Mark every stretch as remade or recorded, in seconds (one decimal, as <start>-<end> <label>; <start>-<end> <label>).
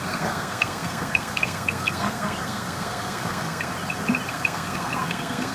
0.0-3.7 remade; 3.7-4.3 recorded; 4.3-5.5 remade